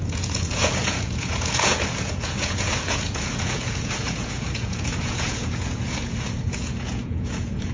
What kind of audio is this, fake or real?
fake